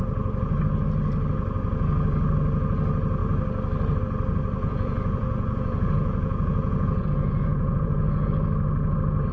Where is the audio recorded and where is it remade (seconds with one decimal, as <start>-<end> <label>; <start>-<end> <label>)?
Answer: 0.0-4.6 recorded; 4.6-8.3 remade; 8.3-9.3 recorded